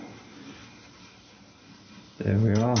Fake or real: real